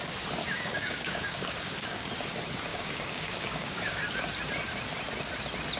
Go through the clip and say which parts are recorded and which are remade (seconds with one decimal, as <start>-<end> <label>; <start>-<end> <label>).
0.0-0.4 recorded; 0.4-2.1 remade; 2.1-2.7 recorded; 2.7-4.0 remade; 4.0-5.8 recorded